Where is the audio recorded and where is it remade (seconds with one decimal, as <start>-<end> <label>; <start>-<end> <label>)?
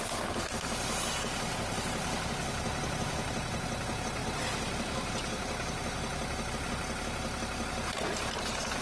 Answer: 0.0-8.8 recorded